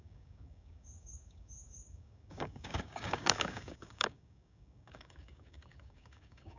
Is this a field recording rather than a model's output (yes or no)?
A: no